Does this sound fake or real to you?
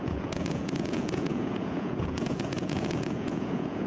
fake